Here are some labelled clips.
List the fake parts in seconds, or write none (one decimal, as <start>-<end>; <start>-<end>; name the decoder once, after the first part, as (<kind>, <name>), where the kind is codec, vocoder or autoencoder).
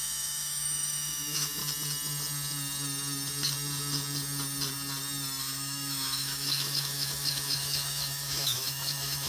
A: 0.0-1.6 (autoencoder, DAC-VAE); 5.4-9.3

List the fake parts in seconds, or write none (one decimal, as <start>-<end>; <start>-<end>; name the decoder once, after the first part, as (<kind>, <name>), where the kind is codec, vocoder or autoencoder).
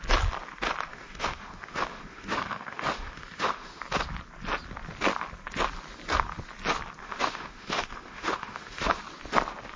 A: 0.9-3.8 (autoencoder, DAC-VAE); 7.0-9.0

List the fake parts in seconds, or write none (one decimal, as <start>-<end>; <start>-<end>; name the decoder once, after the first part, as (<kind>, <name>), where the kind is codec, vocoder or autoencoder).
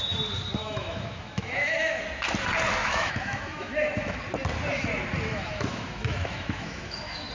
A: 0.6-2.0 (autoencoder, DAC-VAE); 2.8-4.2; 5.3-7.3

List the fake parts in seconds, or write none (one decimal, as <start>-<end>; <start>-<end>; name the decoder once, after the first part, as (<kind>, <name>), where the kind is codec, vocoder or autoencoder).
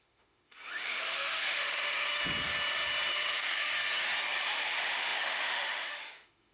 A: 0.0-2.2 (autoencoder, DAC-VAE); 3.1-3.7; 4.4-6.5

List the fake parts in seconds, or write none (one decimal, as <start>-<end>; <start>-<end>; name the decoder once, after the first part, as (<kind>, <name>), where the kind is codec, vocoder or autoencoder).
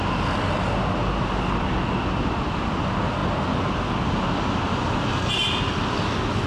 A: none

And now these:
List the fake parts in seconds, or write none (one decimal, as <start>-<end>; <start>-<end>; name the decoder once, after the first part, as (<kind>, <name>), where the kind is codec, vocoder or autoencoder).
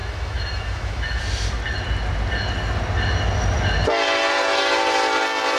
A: 0.0-1.2 (autoencoder, DAC-VAE)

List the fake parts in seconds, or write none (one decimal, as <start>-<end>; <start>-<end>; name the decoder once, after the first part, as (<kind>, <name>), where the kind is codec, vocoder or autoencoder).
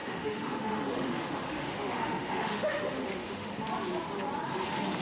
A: 0.0-3.5 (autoencoder, DAC-VAE)